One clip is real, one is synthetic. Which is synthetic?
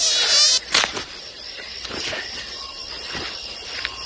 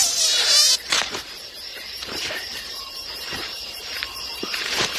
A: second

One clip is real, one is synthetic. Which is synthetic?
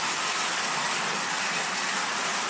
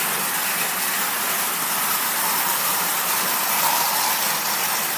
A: first